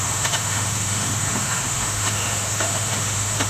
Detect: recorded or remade remade